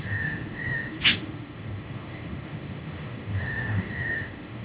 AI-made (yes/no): yes